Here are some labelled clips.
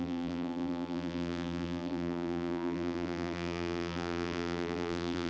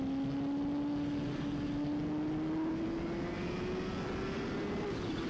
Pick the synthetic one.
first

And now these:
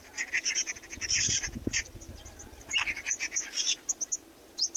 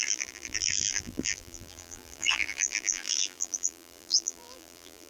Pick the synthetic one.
second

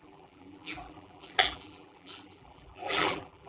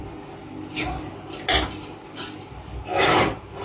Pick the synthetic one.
first